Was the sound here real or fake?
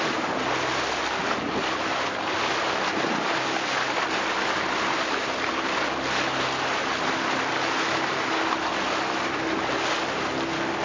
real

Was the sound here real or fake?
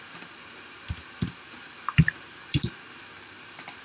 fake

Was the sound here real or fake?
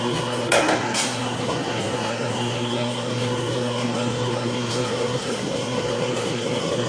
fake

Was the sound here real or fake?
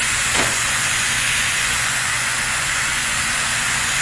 fake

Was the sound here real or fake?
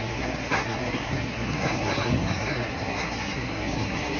fake